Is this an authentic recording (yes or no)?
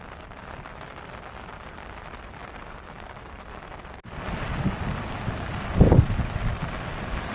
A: yes